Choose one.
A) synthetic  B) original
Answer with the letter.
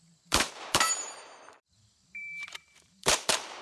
A